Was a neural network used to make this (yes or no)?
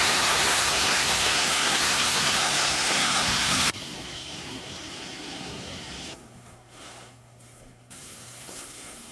yes